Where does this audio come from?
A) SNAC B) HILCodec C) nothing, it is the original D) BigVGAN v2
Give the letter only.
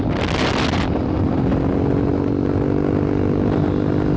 C